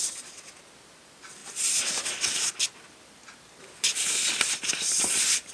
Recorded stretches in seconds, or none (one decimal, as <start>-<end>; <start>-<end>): 0.0-5.5